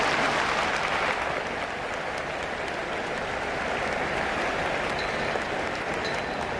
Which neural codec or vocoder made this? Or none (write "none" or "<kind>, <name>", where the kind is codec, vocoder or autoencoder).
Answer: none